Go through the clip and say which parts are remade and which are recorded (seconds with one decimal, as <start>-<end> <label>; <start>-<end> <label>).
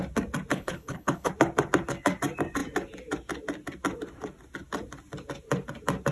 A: 0.0-0.5 recorded; 0.5-1.3 remade; 1.3-6.1 recorded